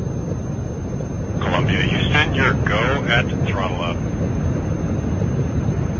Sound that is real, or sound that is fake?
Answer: real